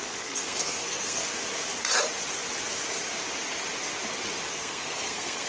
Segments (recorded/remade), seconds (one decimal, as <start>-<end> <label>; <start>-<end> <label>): 0.0-1.2 remade; 1.2-4.5 recorded; 4.5-5.5 remade